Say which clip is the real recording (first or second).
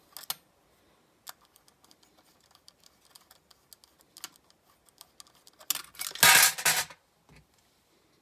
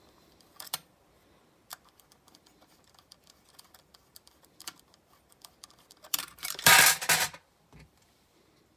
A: first